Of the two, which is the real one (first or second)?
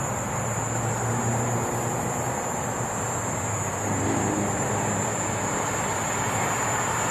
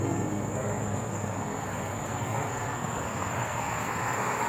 first